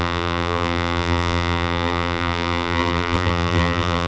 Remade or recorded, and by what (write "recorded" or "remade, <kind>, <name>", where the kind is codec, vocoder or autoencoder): remade, vocoder, BigVGAN v2